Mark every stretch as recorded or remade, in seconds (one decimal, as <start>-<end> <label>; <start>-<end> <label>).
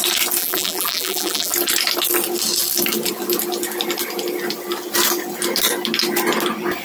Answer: 0.0-0.4 recorded; 0.4-1.5 remade; 1.5-6.8 recorded